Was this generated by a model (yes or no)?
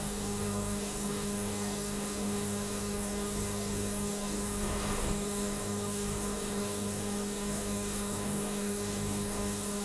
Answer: yes